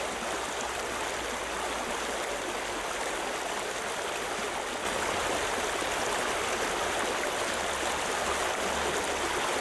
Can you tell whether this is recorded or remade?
recorded